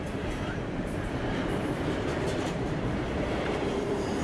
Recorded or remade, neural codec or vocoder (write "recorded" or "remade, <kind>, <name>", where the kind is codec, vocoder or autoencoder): remade, vocoder, BigVGAN v2